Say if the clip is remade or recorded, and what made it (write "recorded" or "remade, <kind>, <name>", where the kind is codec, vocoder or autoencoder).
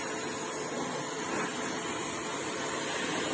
recorded